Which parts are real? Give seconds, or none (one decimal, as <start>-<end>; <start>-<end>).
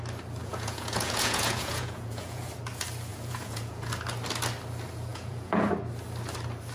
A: 0.0-0.4; 2.5-3.1; 3.9-5.1; 5.7-6.7